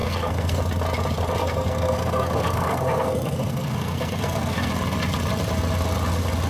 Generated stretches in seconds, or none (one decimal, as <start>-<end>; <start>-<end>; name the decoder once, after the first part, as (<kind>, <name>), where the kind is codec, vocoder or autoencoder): 0.0-0.6 (codec, SNAC); 1.4-4.7